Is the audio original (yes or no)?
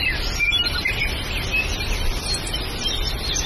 yes